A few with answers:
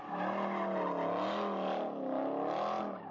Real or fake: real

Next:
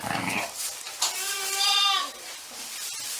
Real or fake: real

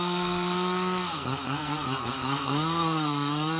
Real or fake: fake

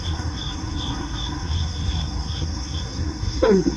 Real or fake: fake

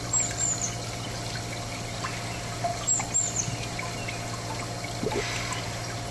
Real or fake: real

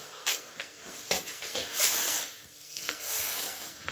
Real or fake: fake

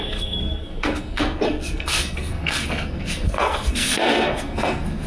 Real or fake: fake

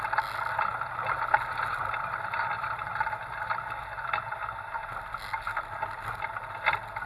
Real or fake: real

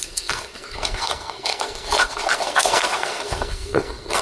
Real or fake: fake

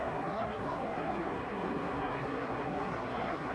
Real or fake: fake